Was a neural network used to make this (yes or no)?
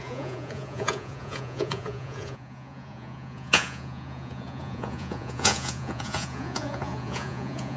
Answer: yes